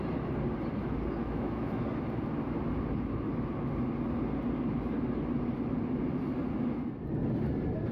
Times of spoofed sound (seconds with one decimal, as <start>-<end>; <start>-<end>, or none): 1.2-1.8